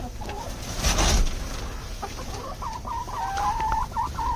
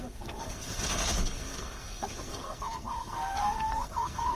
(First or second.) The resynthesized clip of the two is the second